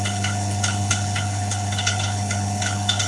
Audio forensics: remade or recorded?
remade